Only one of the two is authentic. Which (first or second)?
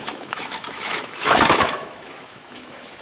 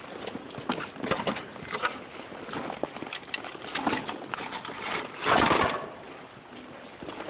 second